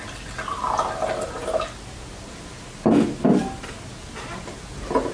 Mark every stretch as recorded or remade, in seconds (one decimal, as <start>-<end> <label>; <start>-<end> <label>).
0.0-5.1 recorded